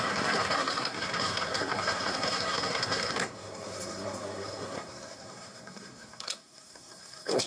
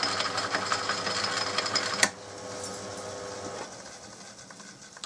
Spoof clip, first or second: first